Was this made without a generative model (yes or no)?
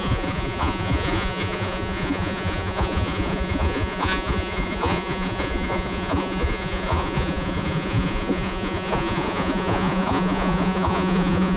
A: no